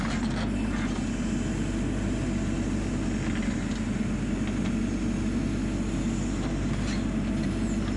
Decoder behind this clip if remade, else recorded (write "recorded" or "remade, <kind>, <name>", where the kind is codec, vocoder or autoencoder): recorded